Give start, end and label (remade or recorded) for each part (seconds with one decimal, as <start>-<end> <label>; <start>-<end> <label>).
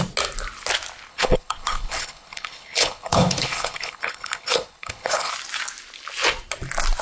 0.0-1.1 recorded; 1.1-5.3 remade; 5.3-7.0 recorded